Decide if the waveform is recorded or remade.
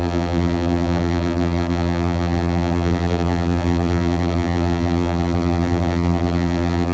remade